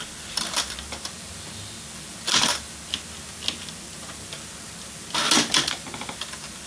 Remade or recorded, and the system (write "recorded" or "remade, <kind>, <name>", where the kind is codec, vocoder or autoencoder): recorded